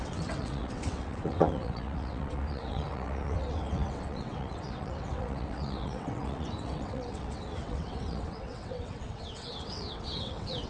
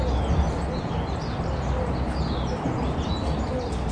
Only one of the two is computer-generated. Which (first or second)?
first